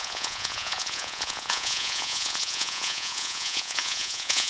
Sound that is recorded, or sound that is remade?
remade